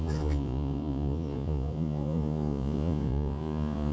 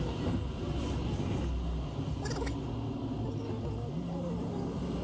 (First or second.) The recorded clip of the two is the second